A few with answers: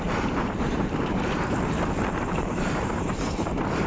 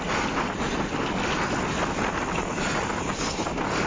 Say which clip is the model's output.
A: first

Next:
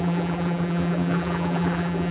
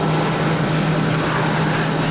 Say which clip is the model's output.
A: first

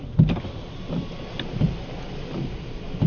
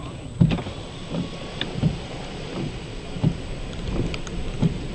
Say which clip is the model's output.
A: second